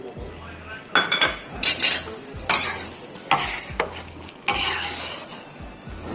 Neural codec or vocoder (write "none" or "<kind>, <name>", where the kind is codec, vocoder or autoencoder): none